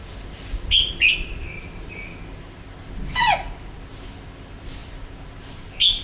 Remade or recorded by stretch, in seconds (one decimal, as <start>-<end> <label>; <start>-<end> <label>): 0.0-6.0 recorded